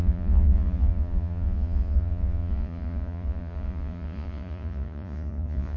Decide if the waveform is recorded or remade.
remade